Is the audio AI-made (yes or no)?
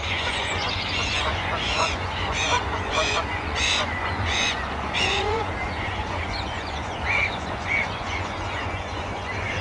yes